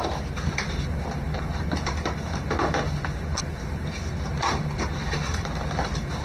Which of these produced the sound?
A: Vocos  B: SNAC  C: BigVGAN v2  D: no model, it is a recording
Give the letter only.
C